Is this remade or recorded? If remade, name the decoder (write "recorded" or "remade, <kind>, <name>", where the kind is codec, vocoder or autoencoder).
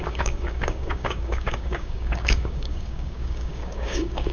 remade, codec, DAC